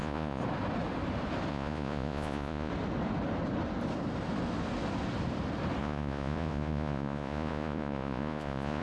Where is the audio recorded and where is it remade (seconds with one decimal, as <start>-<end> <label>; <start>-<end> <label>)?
0.0-0.4 remade; 0.4-1.5 recorded; 1.5-2.7 remade; 2.7-5.8 recorded; 5.8-8.8 remade